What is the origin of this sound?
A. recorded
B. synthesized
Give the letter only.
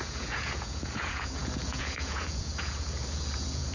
B